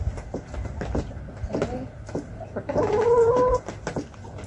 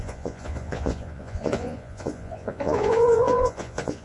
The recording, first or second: first